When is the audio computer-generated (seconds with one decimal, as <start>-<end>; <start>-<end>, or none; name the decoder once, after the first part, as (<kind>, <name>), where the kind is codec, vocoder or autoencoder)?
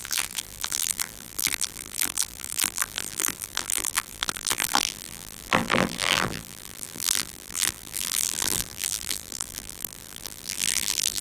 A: 0.0-11.2 (vocoder, BigVGAN v2)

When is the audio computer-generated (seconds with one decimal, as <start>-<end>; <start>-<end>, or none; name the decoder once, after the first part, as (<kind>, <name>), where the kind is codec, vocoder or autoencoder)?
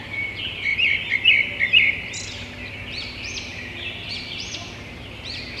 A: 0.0-5.6 (vocoder, BigVGAN v2)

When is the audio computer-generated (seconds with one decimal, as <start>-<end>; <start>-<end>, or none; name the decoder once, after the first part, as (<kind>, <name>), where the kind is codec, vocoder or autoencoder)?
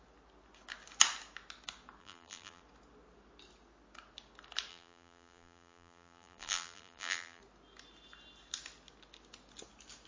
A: 2.0-2.6 (vocoder, BigVGAN v2); 4.7-7.4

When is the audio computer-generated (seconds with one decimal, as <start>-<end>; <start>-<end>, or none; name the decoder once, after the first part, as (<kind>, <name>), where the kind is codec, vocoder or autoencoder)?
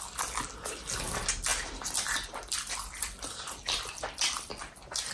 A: 1.5-4.6 (vocoder, BigVGAN v2)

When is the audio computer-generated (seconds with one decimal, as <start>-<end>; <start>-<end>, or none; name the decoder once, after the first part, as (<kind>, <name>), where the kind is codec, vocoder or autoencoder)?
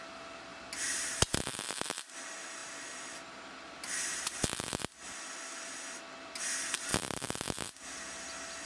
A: none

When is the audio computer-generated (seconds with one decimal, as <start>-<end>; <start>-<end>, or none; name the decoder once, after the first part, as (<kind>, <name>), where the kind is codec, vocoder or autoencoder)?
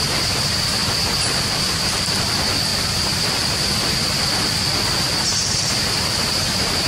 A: 0.0-0.8 (vocoder, BigVGAN v2); 1.4-2.7; 4.9-6.9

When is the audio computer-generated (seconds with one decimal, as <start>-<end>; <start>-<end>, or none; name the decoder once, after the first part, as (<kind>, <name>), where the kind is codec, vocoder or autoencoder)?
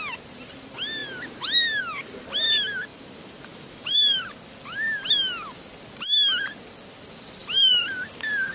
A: 2.9-4.2 (vocoder, BigVGAN v2); 7.4-8.5